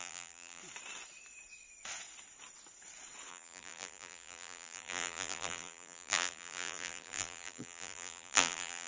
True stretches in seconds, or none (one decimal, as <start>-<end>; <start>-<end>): 0.6-3.3